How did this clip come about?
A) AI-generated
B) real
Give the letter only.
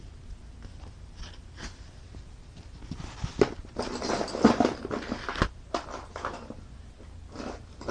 B